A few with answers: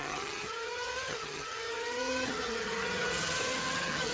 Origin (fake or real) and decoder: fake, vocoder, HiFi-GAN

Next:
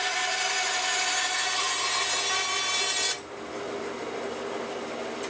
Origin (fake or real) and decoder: real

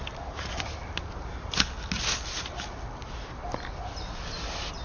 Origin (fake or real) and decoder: real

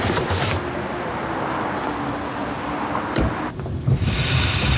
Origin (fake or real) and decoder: real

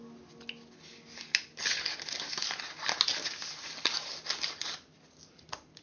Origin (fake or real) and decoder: real